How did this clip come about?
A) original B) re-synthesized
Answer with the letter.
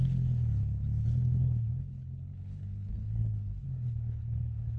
B